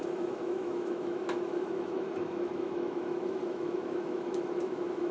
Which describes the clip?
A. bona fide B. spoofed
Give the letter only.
B